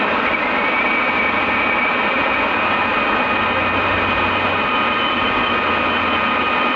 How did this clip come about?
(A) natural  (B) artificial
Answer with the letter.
A